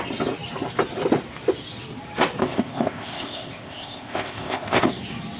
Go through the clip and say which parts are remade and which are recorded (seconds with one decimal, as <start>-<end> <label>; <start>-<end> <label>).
0.0-2.4 recorded; 2.4-4.9 remade; 4.9-5.4 recorded